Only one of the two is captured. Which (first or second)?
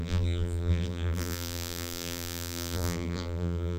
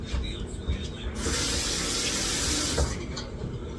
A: second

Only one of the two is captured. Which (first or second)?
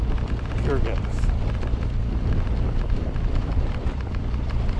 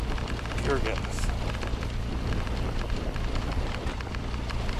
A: second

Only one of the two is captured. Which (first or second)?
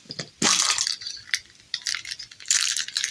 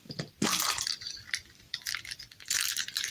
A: first